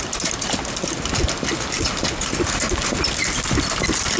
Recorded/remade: recorded